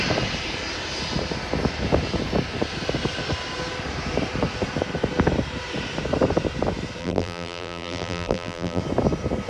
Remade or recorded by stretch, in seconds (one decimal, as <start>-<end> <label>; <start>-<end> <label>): 0.0-7.0 recorded; 7.0-8.8 remade; 8.8-9.5 recorded

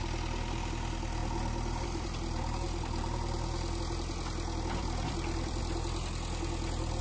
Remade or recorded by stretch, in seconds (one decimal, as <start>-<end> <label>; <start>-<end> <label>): 0.0-1.2 recorded; 1.2-3.8 remade; 3.8-4.8 recorded; 4.8-5.6 remade; 5.6-7.0 recorded